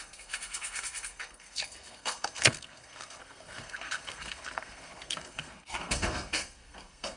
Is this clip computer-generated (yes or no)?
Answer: yes